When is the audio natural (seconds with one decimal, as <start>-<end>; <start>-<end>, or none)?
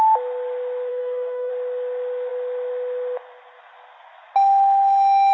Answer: 0.0-0.9; 1.5-5.3